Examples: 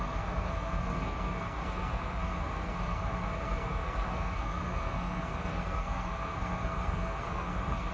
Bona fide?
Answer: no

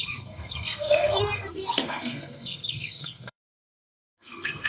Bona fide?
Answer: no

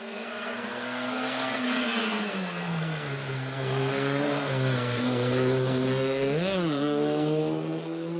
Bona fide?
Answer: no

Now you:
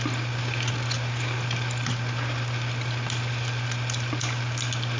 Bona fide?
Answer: yes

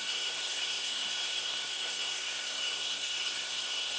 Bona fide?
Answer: no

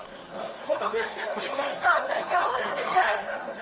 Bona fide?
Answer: no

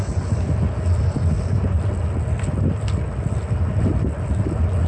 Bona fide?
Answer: yes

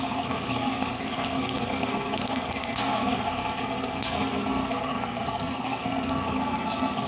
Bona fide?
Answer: no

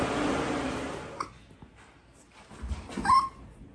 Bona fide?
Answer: yes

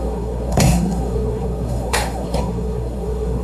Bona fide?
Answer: no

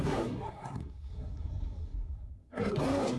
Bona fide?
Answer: no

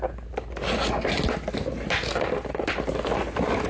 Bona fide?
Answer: yes